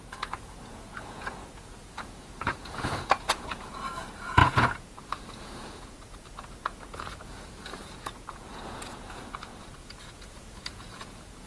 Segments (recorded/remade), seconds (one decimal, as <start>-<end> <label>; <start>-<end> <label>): 0.0-11.5 remade